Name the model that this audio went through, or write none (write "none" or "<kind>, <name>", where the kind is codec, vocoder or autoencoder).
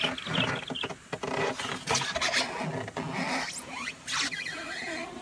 none